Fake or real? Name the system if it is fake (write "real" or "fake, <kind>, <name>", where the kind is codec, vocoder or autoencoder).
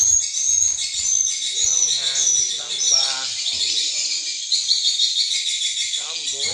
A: fake, vocoder, Vocos